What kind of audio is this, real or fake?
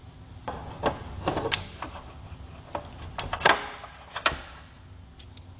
real